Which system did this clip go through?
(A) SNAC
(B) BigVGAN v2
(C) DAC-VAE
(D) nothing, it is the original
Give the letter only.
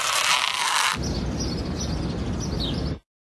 D